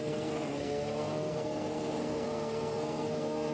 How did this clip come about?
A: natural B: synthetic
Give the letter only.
B